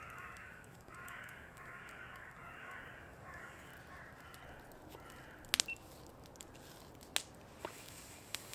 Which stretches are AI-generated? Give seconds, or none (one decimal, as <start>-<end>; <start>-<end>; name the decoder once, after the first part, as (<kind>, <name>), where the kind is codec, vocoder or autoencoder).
0.0-3.7 (codec, DAC); 7.6-8.5